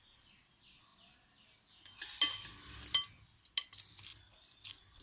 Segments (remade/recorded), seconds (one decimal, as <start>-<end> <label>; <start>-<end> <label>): 0.0-5.0 recorded